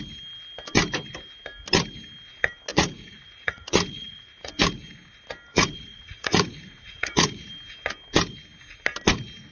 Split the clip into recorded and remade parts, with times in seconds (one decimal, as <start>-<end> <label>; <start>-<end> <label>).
0.0-2.7 recorded; 2.7-4.5 remade; 4.5-5.5 recorded; 5.5-7.5 remade; 7.5-9.5 recorded